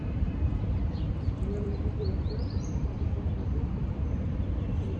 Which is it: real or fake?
fake